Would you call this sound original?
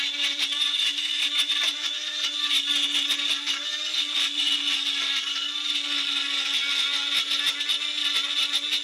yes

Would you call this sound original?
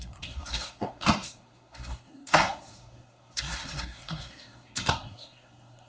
no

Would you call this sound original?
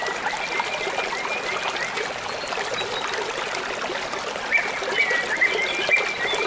yes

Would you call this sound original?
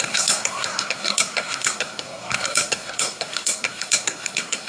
no